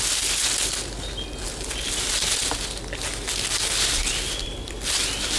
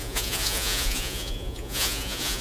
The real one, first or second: first